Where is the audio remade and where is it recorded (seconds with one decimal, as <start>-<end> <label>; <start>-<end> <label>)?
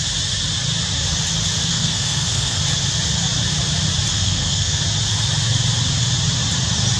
0.0-1.7 recorded; 1.7-2.6 remade; 2.6-4.1 recorded; 4.1-4.8 remade; 4.8-7.0 recorded